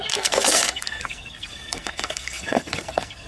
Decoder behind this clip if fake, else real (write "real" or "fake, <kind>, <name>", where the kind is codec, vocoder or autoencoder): fake, codec, SNAC